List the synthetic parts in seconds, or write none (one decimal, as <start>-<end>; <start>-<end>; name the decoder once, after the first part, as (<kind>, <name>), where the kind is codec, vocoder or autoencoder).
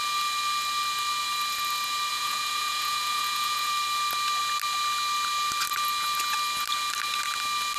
2.1-3.7 (vocoder, Vocos)